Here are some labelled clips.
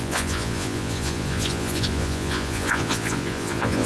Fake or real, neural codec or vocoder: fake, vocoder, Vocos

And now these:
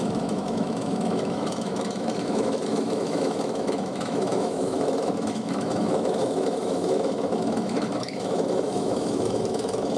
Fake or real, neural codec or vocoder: fake, autoencoder, DAC-VAE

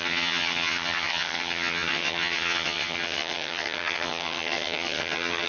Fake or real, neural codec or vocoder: fake, vocoder, HiFi-GAN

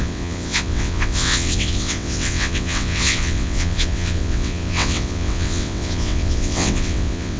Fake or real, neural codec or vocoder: fake, vocoder, WaveNeXt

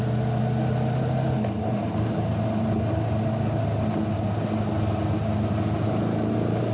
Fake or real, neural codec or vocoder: real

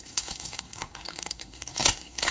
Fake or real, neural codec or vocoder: fake, codec, SNAC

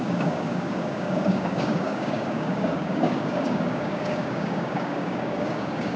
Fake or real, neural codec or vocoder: fake, codec, DAC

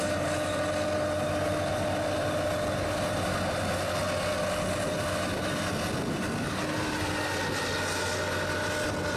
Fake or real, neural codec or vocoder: real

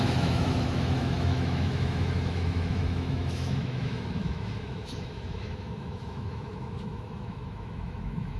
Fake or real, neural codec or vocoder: fake, autoencoder, DAC-VAE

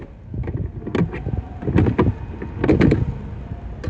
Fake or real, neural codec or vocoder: real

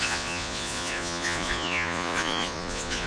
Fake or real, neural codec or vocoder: fake, vocoder, Vocos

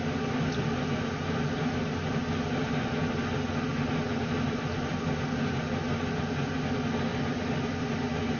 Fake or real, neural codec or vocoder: real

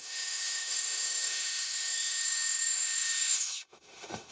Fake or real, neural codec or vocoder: fake, autoencoder, DAC-VAE